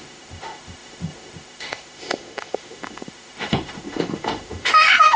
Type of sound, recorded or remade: remade